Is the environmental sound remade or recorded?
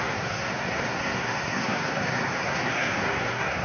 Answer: remade